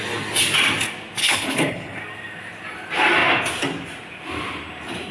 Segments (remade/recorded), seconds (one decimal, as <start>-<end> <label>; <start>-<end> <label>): 0.0-1.2 recorded; 1.2-2.0 remade; 2.0-5.1 recorded